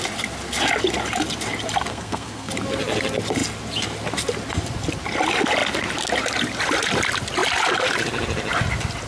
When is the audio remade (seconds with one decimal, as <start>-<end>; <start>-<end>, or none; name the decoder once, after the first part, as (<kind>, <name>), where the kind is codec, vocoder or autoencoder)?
1.9-2.5 (codec, SNAC)